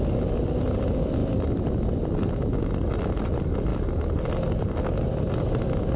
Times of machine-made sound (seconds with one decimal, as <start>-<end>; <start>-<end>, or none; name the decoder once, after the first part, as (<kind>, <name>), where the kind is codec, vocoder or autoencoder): none